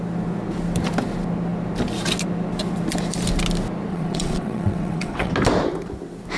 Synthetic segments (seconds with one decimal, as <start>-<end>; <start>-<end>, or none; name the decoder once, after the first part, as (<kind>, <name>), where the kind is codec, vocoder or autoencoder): 3.9-5.3 (vocoder, WaveNeXt)